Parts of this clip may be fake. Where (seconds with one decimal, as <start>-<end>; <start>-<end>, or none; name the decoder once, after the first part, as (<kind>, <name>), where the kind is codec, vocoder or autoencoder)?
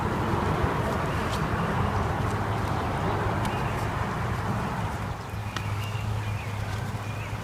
5.4-6.2 (codec, DAC)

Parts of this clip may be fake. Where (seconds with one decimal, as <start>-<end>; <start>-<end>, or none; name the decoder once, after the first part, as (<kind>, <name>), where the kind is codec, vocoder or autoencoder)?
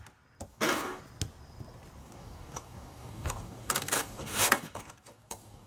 0.5-1.0 (codec, DAC); 2.0-5.7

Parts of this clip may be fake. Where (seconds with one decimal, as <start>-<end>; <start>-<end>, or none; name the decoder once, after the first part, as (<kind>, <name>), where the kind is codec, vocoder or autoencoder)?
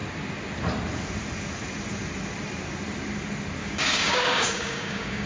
3.6-5.3 (codec, DAC)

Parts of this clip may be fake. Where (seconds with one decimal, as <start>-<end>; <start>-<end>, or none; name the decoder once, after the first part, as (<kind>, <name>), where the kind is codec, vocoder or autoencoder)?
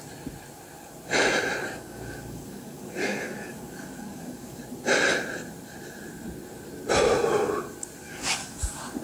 1.6-4.6 (codec, DAC); 8.0-8.5